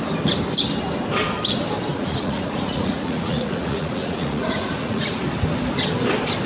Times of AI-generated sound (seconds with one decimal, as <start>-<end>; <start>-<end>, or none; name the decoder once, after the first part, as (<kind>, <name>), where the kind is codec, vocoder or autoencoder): 1.9-5.2 (vocoder, Vocos)